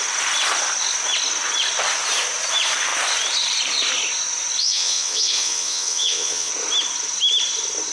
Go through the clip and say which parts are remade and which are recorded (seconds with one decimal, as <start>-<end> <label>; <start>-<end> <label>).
0.0-4.6 recorded; 4.6-6.5 remade; 6.5-7.9 recorded